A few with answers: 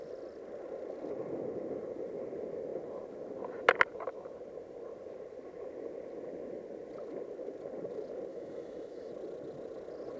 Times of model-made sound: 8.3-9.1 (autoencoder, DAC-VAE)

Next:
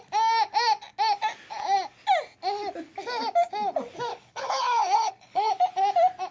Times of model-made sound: 4.1-5.5 (codec, HILCodec)

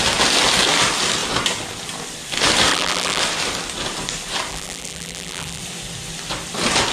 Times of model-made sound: 2.7-3.2 (vocoder, BigVGAN v2); 4.5-5.6